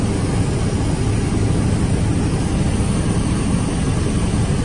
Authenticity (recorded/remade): recorded